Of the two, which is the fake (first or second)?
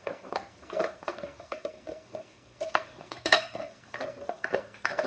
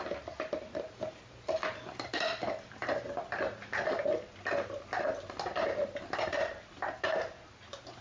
first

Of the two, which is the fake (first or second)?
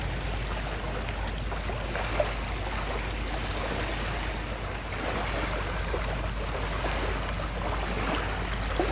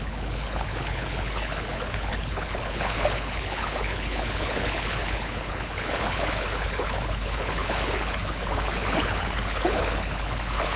second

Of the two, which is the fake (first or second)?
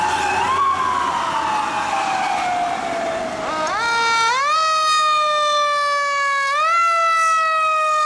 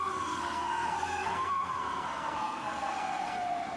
second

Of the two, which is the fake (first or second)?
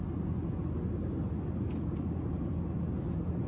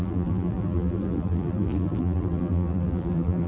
second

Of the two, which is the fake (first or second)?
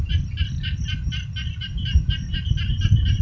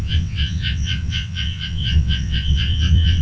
second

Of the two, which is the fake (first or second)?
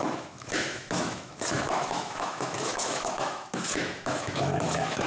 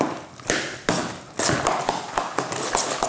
first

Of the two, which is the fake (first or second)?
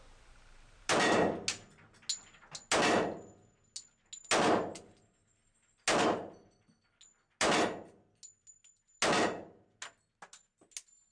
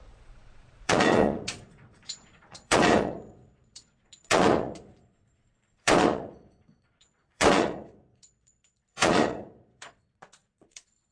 second